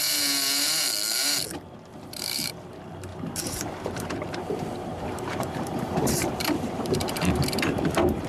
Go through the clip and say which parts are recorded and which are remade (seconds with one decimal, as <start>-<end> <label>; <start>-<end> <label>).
0.0-1.9 recorded; 1.9-2.5 remade; 2.5-3.1 recorded; 3.1-7.8 remade; 7.8-8.3 recorded